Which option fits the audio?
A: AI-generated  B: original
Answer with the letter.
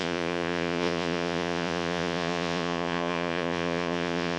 A